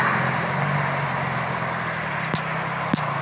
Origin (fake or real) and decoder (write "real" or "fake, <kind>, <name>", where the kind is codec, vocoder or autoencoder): real